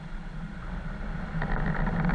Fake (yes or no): no